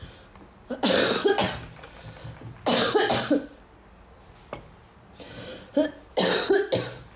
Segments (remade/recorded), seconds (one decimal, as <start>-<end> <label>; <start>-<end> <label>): 0.0-7.2 recorded